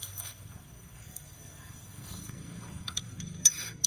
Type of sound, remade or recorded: remade